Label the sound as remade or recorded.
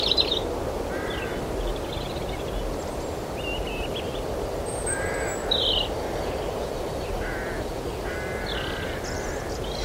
recorded